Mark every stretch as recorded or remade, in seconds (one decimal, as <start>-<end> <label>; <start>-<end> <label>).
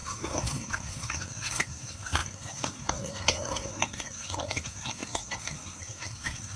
0.0-6.6 remade